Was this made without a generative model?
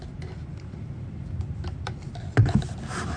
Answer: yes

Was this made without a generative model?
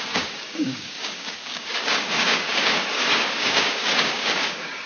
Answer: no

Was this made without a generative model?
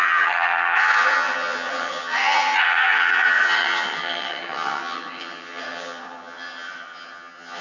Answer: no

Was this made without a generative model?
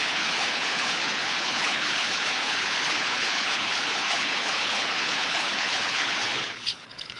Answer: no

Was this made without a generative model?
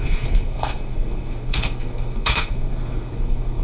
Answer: no